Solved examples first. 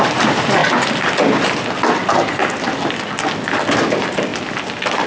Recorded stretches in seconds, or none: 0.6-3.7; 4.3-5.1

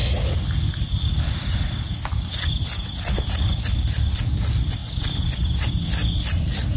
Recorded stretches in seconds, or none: 0.0-6.8

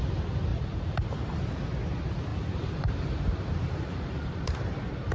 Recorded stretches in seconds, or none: 0.0-0.5; 1.4-2.3